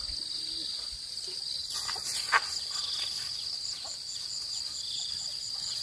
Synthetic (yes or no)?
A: no